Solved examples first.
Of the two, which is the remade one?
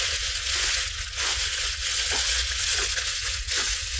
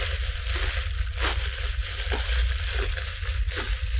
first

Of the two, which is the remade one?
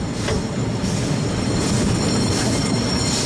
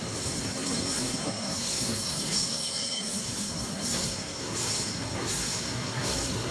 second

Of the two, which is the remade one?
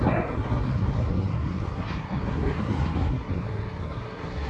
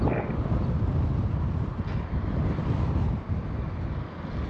first